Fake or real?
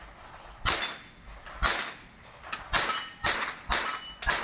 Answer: real